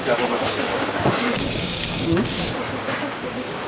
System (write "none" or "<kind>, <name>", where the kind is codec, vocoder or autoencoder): codec, DAC